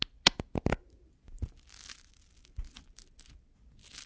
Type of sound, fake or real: real